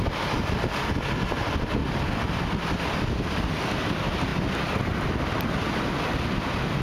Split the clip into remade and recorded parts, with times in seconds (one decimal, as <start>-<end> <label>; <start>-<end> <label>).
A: 0.0-6.8 recorded